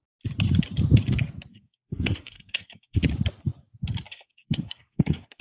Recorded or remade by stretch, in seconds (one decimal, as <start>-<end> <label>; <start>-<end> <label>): 0.0-1.5 recorded; 1.5-3.0 remade; 3.0-4.1 recorded; 4.1-5.4 remade